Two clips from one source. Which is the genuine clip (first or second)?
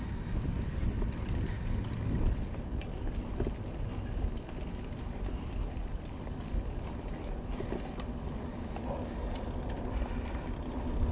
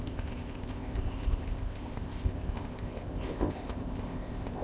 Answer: first